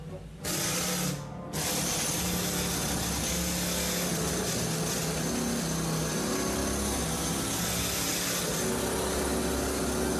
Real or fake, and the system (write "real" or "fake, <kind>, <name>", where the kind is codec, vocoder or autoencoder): real